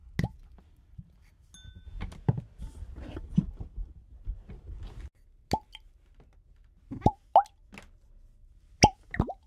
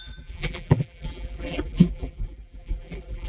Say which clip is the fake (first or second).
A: second